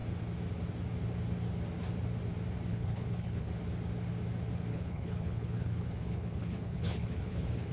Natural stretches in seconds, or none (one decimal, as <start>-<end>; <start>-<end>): 0.0-2.7; 3.5-4.7